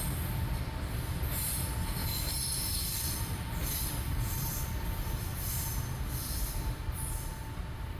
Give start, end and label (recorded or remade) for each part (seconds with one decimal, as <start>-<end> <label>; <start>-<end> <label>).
0.0-2.0 recorded; 2.0-4.6 remade; 4.6-8.0 recorded